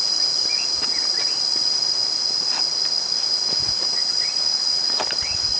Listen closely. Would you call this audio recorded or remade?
recorded